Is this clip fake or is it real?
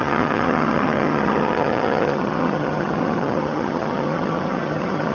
fake